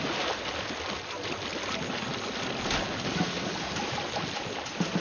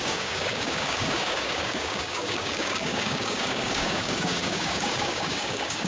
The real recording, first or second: first